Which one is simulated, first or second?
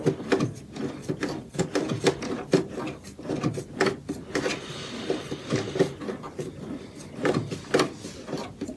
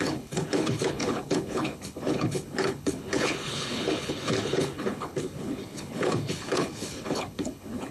second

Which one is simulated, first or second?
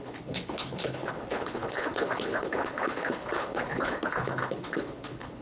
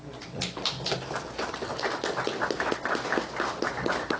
first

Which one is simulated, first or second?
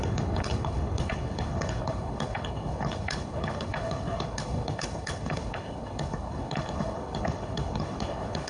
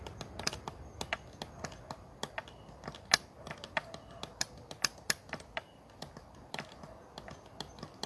first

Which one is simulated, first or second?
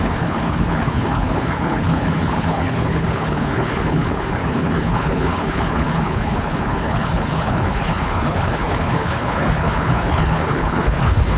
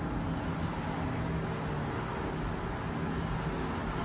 first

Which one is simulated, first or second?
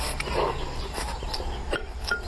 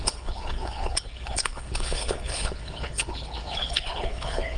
second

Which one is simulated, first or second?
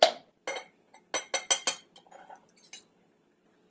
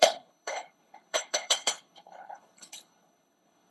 second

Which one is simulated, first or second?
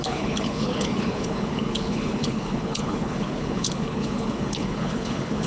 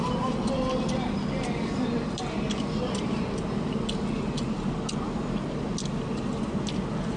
first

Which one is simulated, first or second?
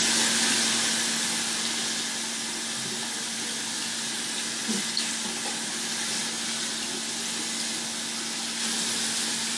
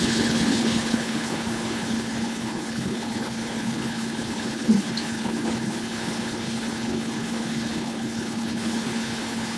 second